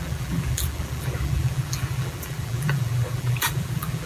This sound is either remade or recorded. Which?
remade